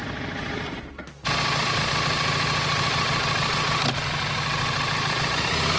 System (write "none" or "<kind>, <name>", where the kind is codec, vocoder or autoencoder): none